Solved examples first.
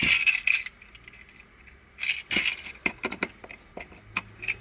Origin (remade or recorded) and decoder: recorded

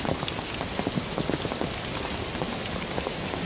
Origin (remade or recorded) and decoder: recorded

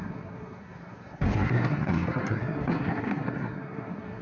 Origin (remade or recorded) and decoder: remade, codec, SNAC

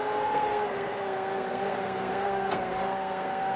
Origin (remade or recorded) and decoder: remade, codec, SNAC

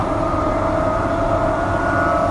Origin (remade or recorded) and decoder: recorded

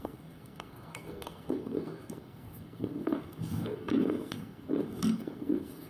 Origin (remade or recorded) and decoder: remade, codec, SNAC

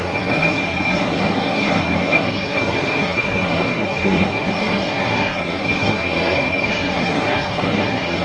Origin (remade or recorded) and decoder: remade, codec, SNAC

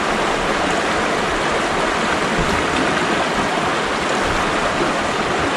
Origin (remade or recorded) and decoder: recorded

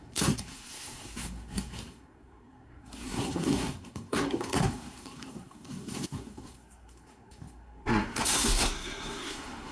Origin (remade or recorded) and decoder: remade, codec, SNAC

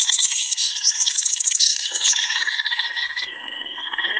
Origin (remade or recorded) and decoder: remade, codec, SNAC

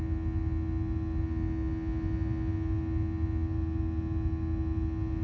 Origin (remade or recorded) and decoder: recorded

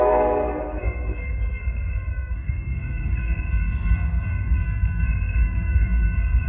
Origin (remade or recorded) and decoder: remade, codec, SNAC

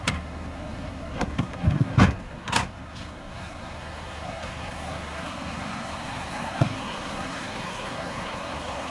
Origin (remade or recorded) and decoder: remade, codec, SNAC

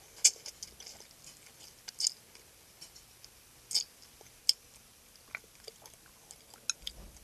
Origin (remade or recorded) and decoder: recorded